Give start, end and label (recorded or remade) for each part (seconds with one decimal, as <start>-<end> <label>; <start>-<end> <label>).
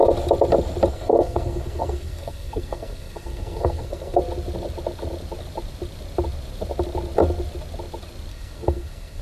0.0-0.9 recorded; 0.9-4.2 remade; 4.2-8.3 recorded; 8.3-9.2 remade